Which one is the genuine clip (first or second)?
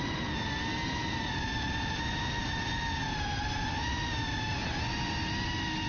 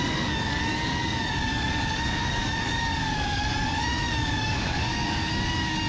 first